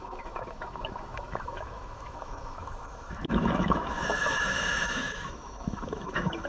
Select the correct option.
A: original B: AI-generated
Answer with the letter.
B